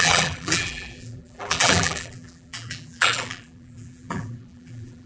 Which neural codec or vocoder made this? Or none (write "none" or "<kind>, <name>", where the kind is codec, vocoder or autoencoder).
vocoder, BigVGAN v2